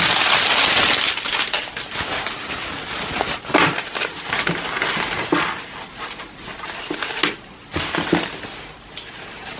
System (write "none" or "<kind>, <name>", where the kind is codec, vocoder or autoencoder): none